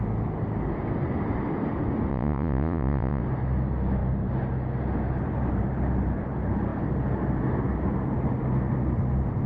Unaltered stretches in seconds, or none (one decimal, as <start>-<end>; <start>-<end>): 0.0-2.1; 3.2-9.5